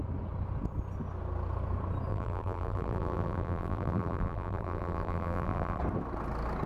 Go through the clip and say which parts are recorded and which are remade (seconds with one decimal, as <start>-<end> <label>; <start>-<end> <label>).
0.0-2.1 recorded; 2.1-5.8 remade; 5.8-6.7 recorded